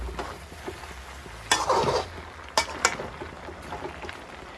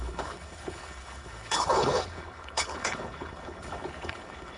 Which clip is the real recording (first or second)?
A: first